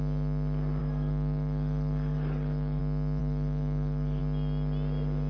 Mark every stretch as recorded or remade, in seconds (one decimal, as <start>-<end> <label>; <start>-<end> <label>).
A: 0.0-0.8 recorded; 0.8-2.8 remade; 2.8-3.2 recorded; 3.2-4.2 remade; 4.2-5.3 recorded